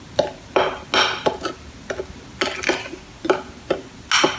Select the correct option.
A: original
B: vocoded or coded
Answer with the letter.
A